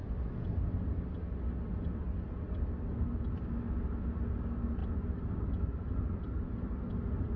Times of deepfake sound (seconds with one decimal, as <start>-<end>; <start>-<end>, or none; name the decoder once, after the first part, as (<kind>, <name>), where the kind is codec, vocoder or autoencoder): none